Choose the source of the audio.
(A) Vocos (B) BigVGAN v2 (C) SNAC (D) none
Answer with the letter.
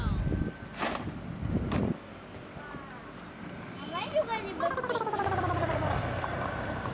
D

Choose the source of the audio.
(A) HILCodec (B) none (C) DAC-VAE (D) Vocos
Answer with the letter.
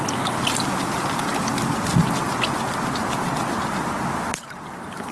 B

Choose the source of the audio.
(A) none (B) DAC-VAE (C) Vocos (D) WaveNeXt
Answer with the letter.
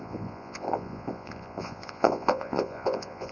C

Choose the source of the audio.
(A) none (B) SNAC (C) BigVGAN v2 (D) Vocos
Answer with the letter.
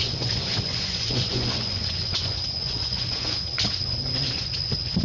D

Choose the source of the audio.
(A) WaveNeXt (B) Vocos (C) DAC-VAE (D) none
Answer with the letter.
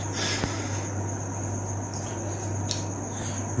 D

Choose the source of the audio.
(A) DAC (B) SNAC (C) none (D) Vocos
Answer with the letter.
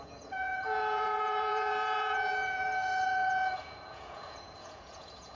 D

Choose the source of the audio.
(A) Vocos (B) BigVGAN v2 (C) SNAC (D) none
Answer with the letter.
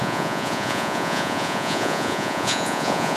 A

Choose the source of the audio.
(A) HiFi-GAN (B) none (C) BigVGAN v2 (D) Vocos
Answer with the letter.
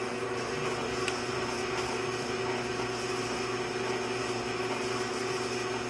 B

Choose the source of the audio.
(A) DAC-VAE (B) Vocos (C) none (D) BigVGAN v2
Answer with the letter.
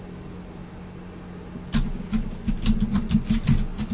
C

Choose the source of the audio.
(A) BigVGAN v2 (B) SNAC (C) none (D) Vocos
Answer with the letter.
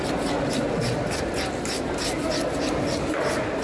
C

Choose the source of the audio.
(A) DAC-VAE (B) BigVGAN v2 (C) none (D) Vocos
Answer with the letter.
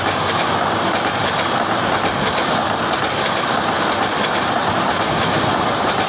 C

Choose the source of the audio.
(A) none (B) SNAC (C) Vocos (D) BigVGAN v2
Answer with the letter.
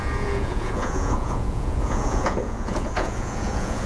C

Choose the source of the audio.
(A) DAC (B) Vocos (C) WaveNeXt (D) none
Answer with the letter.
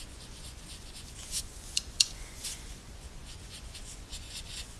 B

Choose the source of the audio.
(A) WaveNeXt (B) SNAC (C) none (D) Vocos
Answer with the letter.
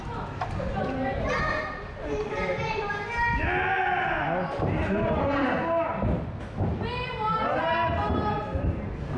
C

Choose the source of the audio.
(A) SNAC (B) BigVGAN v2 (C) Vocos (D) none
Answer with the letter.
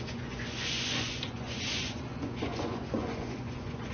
C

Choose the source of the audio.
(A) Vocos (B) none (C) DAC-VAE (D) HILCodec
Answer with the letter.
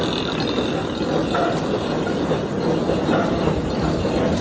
B